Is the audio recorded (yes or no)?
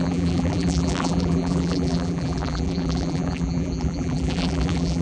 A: no